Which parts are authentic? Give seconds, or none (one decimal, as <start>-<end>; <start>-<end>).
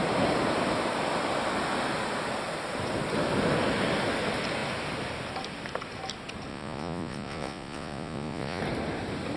0.0-6.5; 8.6-9.4